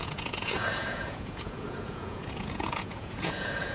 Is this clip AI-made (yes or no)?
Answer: yes